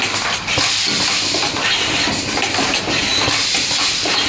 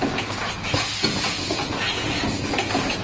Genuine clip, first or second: first